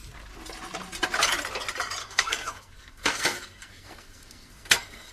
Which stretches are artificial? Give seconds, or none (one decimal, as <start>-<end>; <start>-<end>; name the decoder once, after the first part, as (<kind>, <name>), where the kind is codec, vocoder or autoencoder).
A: 2.0-5.1 (codec, SNAC)